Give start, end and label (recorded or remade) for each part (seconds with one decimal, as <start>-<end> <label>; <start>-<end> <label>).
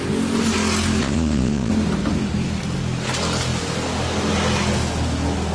0.0-1.0 recorded; 1.0-1.7 remade; 1.7-5.5 recorded